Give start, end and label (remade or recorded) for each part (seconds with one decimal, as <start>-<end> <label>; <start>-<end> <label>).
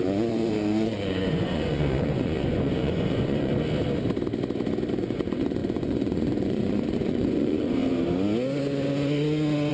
0.0-3.5 remade; 3.5-4.9 recorded; 4.9-7.8 remade; 7.8-9.7 recorded